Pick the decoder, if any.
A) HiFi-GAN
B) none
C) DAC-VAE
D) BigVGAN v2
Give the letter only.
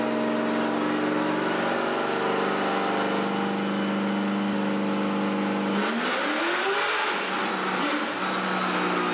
B